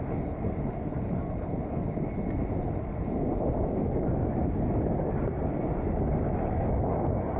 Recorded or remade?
recorded